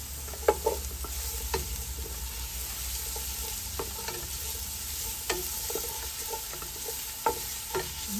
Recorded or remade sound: recorded